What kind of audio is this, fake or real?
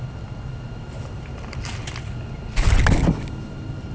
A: real